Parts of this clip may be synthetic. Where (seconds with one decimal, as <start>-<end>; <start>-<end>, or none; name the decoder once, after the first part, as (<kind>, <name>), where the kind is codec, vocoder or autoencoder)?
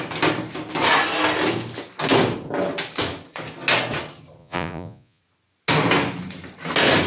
4.4-5.2 (vocoder, Vocos)